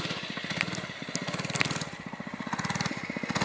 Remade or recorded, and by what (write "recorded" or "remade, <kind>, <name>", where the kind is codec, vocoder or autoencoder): recorded